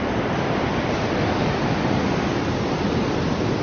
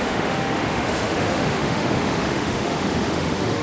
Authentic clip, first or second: first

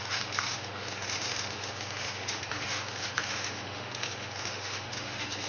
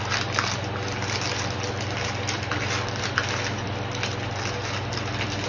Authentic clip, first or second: second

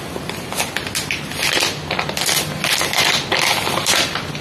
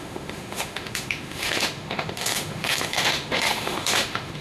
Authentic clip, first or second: first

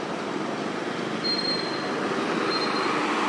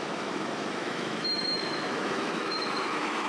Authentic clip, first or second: first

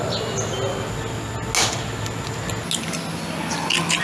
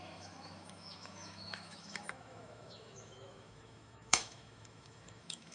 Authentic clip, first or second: first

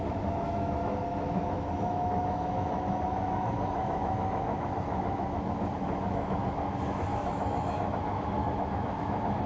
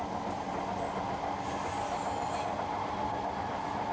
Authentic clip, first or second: second